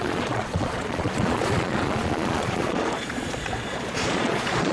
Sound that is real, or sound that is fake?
fake